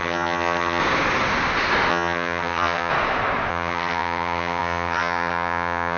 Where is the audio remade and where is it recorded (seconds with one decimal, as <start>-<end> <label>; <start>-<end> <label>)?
0.0-0.8 remade; 0.8-1.9 recorded; 1.9-2.9 remade; 2.9-3.5 recorded; 3.5-6.0 remade